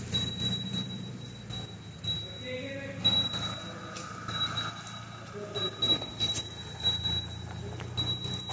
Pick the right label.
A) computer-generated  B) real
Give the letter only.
B